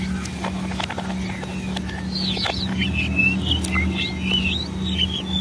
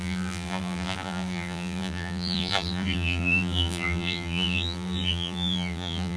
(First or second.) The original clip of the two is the first